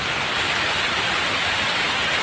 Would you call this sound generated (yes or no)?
no